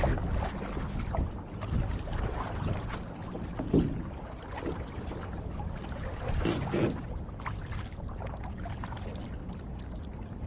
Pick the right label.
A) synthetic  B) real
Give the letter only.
B